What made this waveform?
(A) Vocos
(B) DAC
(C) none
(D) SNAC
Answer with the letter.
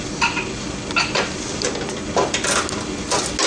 C